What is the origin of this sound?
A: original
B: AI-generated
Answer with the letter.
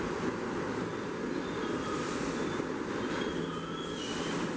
A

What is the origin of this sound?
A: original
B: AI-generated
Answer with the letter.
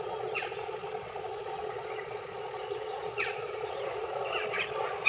B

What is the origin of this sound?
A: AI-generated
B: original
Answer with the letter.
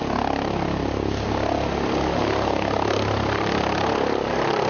B